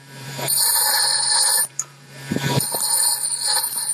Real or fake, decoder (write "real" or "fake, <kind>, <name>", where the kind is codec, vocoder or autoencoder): fake, vocoder, BigVGAN v2